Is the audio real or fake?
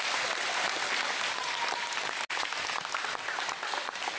real